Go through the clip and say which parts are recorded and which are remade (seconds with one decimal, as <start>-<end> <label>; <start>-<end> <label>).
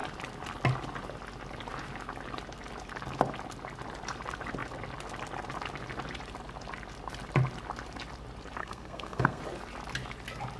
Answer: 0.0-8.6 recorded; 8.6-9.4 remade; 9.4-10.6 recorded